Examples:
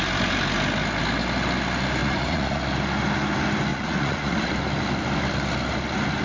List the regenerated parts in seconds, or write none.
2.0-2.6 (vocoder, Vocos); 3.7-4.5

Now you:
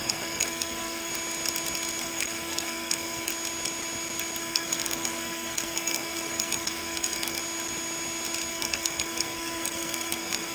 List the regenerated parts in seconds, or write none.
0.0-1.1 (codec, SNAC); 2.0-3.3; 4.4-7.4; 8.5-10.5